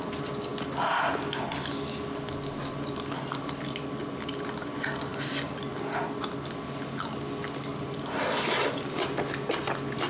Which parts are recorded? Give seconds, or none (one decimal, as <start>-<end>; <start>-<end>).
0.0-10.1